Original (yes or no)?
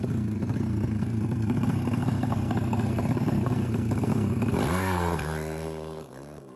no